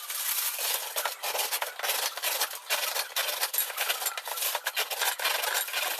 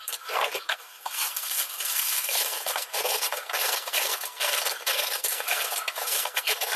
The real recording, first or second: first